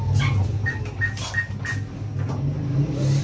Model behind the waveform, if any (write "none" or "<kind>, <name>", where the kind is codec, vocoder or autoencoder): none